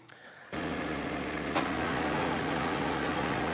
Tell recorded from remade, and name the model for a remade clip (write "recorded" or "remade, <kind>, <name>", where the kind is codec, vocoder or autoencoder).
remade, vocoder, Vocos